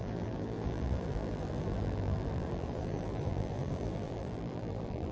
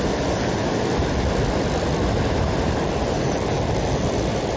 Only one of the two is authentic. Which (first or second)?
second